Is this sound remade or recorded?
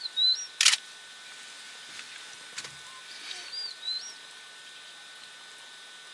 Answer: recorded